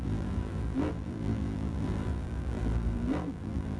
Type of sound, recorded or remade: remade